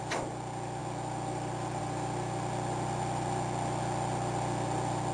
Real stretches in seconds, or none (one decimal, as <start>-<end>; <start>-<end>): 0.0-5.1